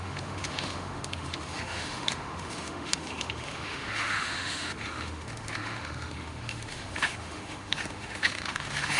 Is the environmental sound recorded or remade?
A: remade